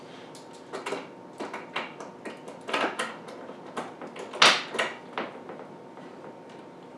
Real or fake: real